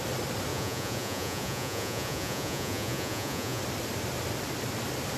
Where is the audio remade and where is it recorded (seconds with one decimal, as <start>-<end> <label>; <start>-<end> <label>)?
0.0-0.5 recorded; 0.5-3.6 remade; 3.6-5.2 recorded